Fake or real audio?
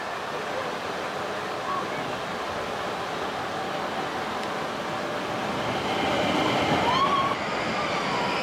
real